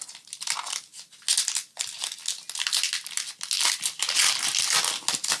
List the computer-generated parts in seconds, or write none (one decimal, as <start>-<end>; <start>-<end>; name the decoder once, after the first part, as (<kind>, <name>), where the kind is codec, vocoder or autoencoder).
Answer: none